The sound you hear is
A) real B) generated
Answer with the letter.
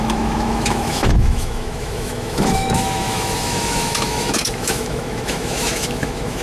B